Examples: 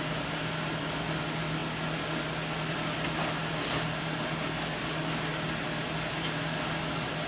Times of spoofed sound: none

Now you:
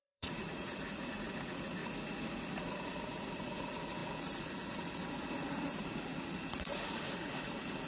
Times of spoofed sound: 0.0-1.8 (vocoder, Vocos); 2.3-7.9

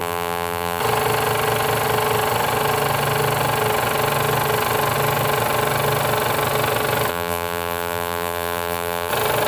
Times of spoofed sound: 0.0-0.8 (vocoder, BigVGAN v2); 7.1-9.1

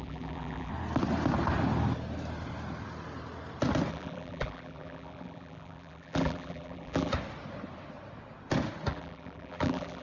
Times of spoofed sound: 0.0-0.7 (vocoder, BigVGAN v2); 3.9-7.1; 8.9-10.0

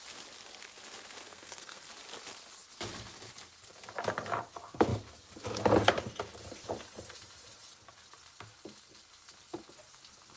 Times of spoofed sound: 1.3-1.9 (codec, SNAC)

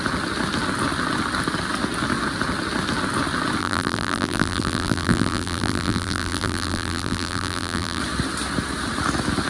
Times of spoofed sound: 3.6-8.0 (vocoder, BigVGAN v2)

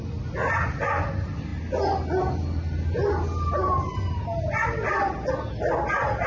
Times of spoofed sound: none

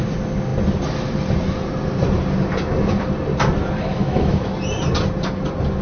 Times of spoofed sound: 3.9-4.5 (autoencoder, DAC-VAE)